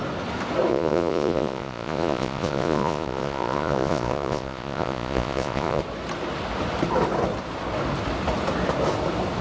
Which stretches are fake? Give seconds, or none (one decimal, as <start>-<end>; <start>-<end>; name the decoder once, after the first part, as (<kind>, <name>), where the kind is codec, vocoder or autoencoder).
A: 0.7-5.8 (vocoder, Vocos)